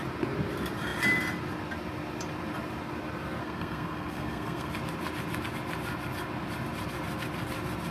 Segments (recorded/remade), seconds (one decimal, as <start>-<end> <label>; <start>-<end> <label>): 0.0-3.4 recorded; 3.4-4.7 remade; 4.7-7.9 recorded